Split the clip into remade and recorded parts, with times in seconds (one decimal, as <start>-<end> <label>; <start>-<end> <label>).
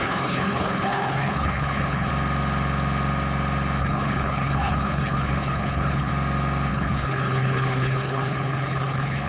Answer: 0.0-2.1 remade; 2.1-3.8 recorded; 3.8-6.1 remade; 6.1-6.7 recorded; 6.7-9.3 remade